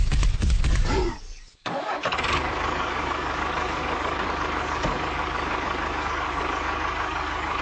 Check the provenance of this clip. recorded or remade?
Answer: remade